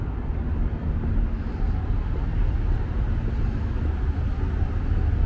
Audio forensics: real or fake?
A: real